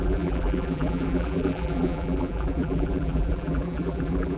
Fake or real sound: fake